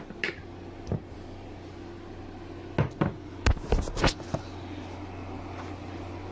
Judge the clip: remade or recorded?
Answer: recorded